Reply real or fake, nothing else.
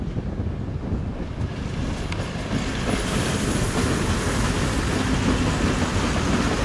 real